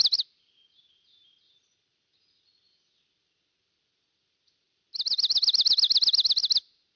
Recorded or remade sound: recorded